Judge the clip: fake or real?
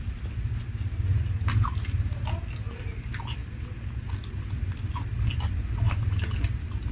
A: real